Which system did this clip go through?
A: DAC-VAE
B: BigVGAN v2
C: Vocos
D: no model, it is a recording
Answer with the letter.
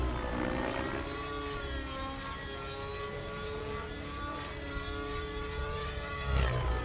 D